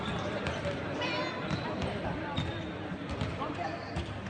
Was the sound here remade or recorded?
recorded